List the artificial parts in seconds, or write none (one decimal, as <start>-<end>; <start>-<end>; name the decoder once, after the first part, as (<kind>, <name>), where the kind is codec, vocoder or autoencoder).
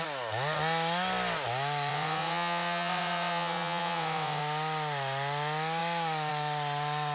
1.9-4.4 (vocoder, WaveNeXt)